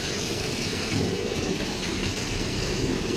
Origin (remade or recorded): remade